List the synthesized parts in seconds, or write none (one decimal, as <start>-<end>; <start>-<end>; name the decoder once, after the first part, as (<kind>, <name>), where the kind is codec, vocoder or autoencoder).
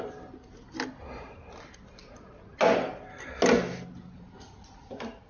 none